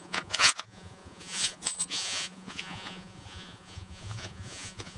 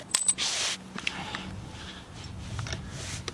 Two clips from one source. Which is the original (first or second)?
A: second